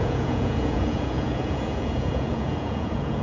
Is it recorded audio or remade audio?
remade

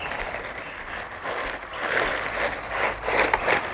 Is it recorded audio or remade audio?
recorded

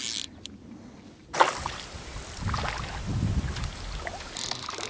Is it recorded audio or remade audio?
recorded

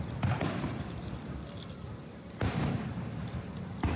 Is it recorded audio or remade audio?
recorded